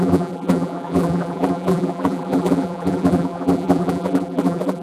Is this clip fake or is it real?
fake